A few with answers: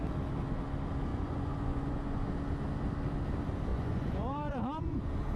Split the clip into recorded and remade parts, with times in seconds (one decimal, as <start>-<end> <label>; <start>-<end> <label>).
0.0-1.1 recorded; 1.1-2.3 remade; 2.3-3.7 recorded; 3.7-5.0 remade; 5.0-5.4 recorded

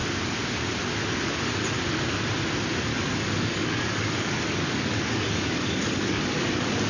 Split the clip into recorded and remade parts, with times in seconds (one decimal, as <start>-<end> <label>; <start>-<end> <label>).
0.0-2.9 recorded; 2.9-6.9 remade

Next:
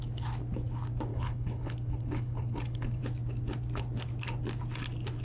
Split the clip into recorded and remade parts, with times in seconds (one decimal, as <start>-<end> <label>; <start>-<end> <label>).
0.0-1.1 recorded; 1.1-3.0 remade; 3.0-5.2 recorded

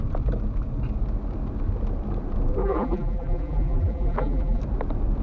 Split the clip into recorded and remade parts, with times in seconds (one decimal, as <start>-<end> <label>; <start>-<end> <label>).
0.0-2.6 recorded; 2.6-4.6 remade; 4.6-5.2 recorded